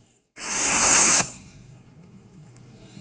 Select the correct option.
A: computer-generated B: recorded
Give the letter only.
A